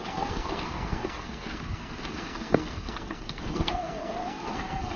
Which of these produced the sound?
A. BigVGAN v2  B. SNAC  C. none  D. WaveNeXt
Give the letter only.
B